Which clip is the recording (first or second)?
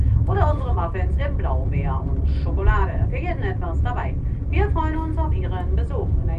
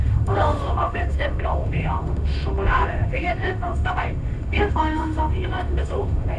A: first